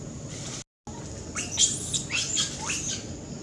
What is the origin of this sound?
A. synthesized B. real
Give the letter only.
B